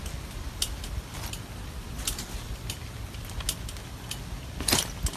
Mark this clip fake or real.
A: real